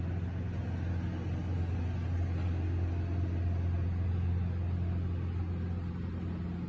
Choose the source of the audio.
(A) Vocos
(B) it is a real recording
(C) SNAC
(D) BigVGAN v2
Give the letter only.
B